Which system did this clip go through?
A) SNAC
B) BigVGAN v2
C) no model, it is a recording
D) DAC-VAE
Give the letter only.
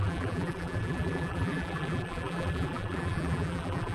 B